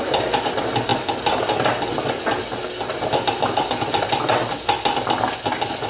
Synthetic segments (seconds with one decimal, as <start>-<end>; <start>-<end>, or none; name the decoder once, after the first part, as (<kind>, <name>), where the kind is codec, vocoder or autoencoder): none